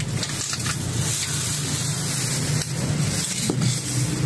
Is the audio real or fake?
real